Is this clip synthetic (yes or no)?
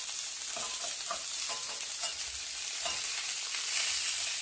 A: no